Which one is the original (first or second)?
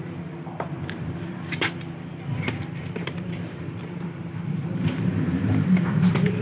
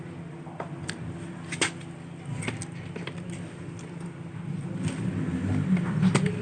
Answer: second